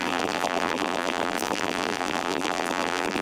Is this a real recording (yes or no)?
no